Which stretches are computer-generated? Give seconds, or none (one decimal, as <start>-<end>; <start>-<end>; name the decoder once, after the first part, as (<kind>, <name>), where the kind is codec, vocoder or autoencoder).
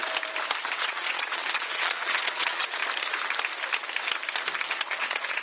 0.6-2.8 (vocoder, Vocos); 4.7-5.4